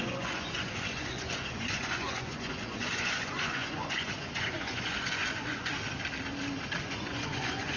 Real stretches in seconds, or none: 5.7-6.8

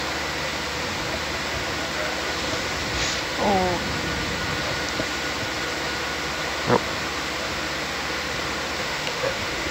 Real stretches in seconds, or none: 0.0-8.8

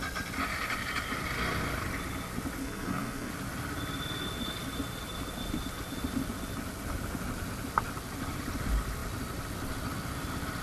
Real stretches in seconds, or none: 0.0-2.6; 3.3-10.6

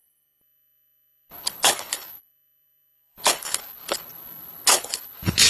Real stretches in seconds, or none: none

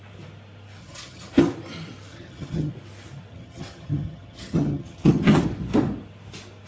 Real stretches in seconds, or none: 0.0-0.8; 1.5-2.1; 2.7-3.3; 5.4-6.7

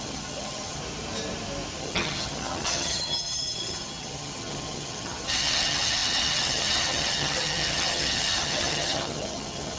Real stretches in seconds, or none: 0.8-1.8